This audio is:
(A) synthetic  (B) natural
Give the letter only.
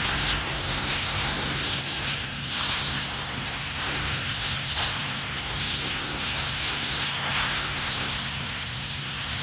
A